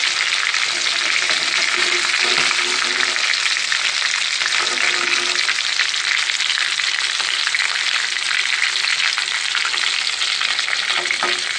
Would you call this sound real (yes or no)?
yes